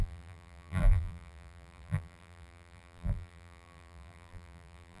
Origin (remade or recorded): remade